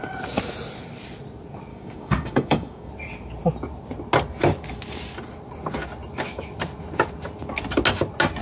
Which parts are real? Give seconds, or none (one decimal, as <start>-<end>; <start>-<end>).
0.0-1.7; 2.9-8.4